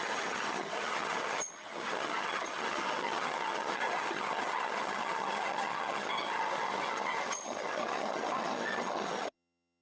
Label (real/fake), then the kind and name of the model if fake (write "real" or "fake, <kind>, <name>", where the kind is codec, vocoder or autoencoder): fake, vocoder, HiFi-GAN